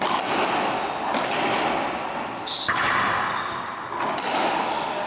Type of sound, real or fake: real